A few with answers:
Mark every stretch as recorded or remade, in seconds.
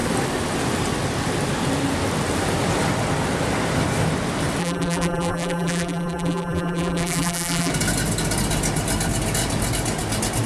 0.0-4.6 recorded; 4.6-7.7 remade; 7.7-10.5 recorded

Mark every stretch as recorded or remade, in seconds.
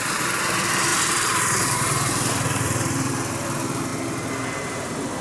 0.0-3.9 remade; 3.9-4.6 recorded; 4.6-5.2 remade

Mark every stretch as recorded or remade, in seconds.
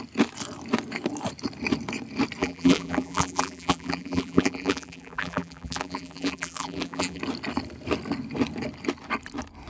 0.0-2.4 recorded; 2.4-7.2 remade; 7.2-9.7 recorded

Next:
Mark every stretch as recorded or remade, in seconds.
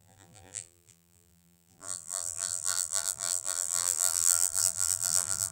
0.0-5.5 remade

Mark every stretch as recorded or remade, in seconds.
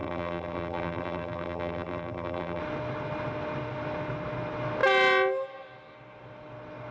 0.0-2.6 remade; 2.6-6.9 recorded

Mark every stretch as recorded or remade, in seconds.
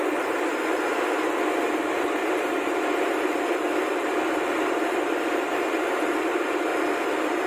0.0-7.5 remade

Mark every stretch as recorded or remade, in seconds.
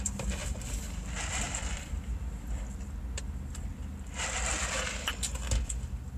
0.0-0.4 recorded; 0.4-2.0 remade; 2.0-3.7 recorded; 3.7-4.7 remade; 4.7-6.2 recorded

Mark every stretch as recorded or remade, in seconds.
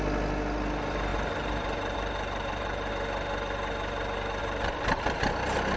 0.0-1.1 recorded; 1.1-2.9 remade; 2.9-4.4 recorded; 4.4-5.2 remade; 5.2-5.8 recorded